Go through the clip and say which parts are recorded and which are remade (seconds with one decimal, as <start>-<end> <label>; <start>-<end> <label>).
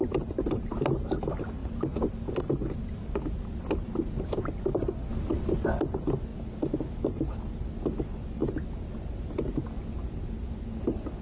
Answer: 0.0-11.2 recorded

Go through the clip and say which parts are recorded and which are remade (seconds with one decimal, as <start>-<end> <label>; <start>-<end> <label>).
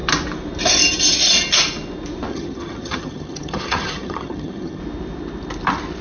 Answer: 0.0-2.3 recorded; 2.3-4.8 remade; 4.8-6.0 recorded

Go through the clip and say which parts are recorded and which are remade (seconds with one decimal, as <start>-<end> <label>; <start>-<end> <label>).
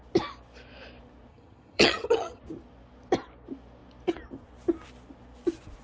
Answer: 0.0-1.3 recorded; 1.3-2.4 remade; 2.4-5.8 recorded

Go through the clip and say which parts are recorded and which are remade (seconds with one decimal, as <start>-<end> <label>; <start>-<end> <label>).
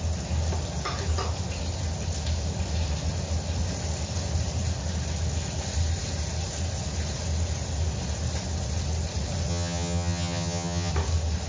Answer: 0.0-9.5 recorded; 9.5-10.9 remade; 10.9-11.5 recorded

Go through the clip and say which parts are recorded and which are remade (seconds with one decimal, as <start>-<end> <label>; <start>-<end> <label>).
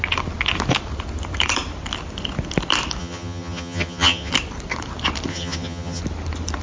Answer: 0.0-3.0 recorded; 3.0-4.3 remade; 4.3-5.3 recorded; 5.3-6.0 remade; 6.0-6.6 recorded